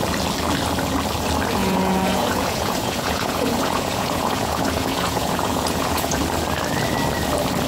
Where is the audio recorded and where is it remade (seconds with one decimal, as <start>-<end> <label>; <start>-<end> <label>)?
0.0-1.6 recorded; 1.6-6.2 remade; 6.2-7.7 recorded